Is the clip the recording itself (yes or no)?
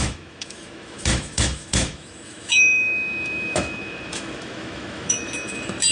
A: no